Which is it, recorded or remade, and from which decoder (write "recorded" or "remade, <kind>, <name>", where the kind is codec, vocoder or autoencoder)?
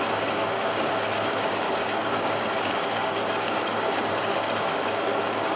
remade, codec, DAC